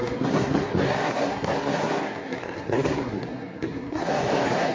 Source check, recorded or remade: remade